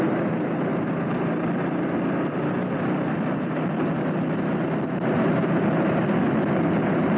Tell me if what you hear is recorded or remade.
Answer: recorded